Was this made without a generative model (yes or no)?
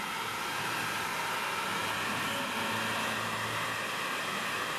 yes